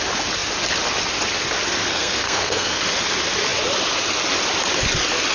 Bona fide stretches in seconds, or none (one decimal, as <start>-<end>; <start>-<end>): 0.0-1.9; 2.8-5.3